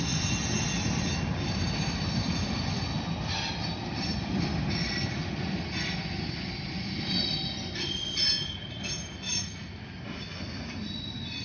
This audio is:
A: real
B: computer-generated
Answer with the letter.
A